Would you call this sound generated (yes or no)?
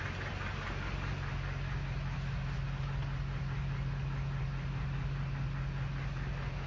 no